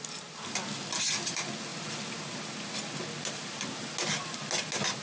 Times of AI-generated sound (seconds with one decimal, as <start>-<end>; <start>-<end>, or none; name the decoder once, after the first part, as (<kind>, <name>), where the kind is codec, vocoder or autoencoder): none